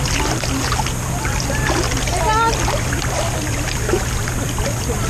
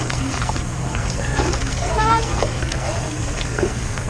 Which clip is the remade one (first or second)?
second